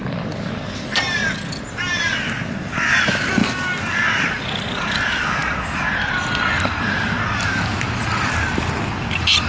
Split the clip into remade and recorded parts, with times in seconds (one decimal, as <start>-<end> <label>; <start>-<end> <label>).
0.0-1.2 remade; 1.2-2.6 recorded; 2.6-3.4 remade; 3.4-4.2 recorded; 4.2-5.4 remade; 5.4-6.0 recorded; 6.0-9.5 remade